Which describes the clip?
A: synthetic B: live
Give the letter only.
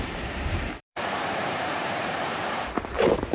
A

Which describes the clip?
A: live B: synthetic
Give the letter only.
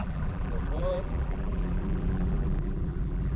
B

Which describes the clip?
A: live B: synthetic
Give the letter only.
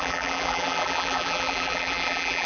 B